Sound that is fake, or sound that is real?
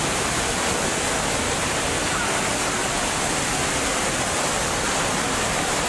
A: real